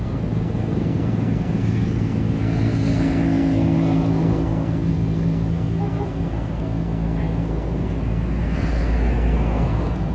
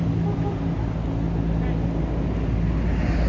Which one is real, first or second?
second